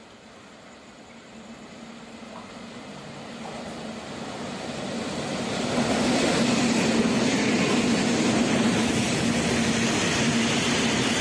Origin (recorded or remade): recorded